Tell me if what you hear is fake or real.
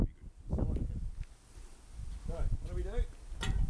real